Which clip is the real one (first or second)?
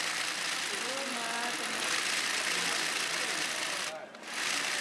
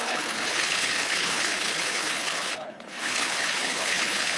first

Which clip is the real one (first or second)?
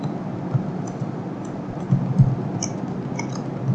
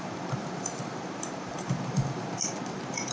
first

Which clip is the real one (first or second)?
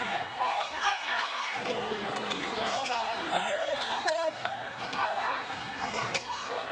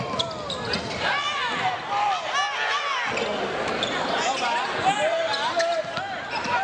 second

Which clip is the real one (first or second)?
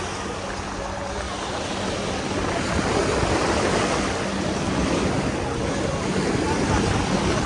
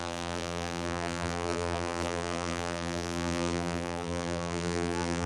first